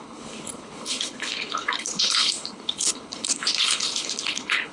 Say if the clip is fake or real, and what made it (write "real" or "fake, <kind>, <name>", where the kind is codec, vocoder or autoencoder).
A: fake, codec, HILCodec